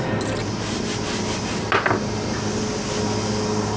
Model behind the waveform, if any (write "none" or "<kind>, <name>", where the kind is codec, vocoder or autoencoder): none